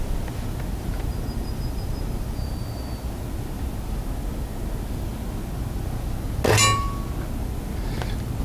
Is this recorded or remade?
recorded